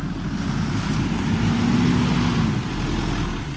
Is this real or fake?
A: real